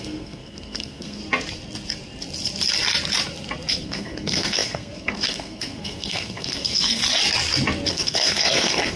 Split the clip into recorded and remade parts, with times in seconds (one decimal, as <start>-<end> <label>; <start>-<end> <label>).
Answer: 0.0-1.2 remade; 1.2-3.7 recorded; 3.7-7.0 remade; 7.0-7.9 recorded; 7.9-9.0 remade